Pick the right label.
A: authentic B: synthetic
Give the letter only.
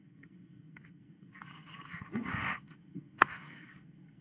B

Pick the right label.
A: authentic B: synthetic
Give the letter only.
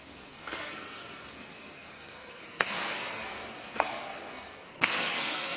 B